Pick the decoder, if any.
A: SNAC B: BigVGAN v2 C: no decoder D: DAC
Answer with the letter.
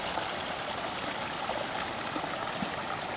C